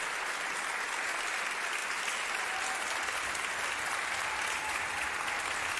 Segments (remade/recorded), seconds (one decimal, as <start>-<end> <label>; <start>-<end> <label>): 0.0-5.8 recorded